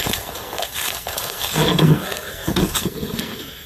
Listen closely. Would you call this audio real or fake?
fake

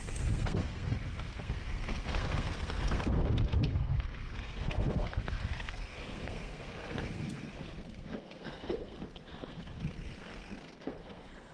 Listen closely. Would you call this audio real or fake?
fake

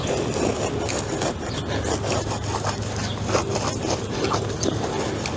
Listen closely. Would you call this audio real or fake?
real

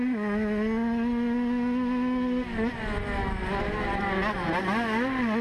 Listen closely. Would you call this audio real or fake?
real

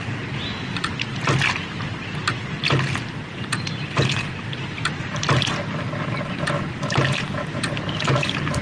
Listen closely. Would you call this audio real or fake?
real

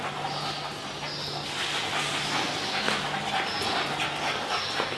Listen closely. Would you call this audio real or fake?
real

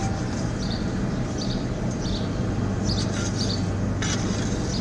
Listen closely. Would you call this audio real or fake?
real